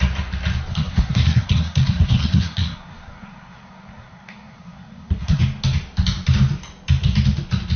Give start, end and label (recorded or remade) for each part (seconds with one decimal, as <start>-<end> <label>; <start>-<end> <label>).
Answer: 0.0-0.7 recorded; 0.7-5.4 remade; 5.4-7.8 recorded